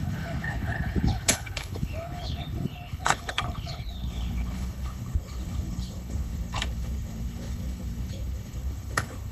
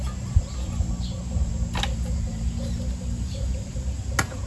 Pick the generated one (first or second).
first